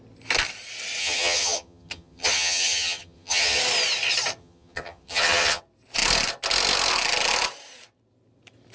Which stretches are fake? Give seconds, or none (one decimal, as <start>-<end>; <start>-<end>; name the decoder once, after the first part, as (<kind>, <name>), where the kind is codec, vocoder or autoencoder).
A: 1.0-3.6 (vocoder, HiFi-GAN); 4.4-5.6